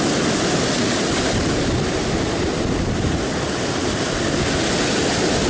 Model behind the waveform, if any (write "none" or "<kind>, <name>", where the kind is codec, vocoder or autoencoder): none